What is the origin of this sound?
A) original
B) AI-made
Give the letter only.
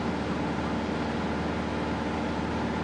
A